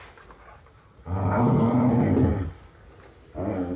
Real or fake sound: real